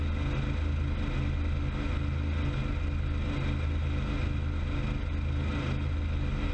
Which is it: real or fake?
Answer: real